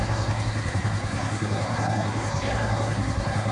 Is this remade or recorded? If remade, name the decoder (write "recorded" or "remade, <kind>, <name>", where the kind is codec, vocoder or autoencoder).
remade, codec, SNAC